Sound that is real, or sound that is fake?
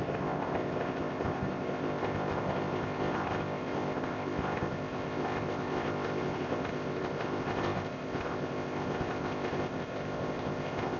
fake